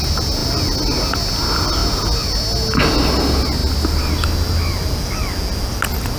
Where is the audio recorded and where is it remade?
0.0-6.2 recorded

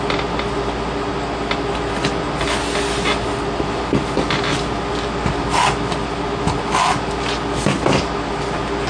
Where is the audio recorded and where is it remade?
0.0-8.9 recorded

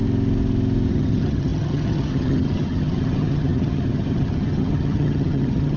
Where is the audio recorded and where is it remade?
0.0-0.9 recorded; 0.9-5.8 remade

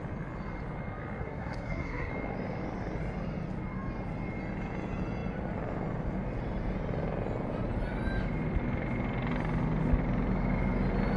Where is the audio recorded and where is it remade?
0.0-1.2 recorded; 1.2-2.1 remade; 2.1-11.2 recorded

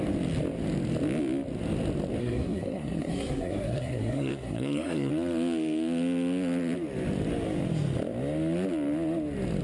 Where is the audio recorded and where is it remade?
0.0-2.2 recorded; 2.2-5.1 remade; 5.1-9.6 recorded

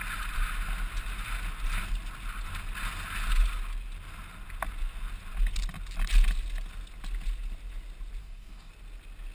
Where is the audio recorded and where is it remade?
0.0-8.2 recorded; 8.2-8.7 remade; 8.7-9.3 recorded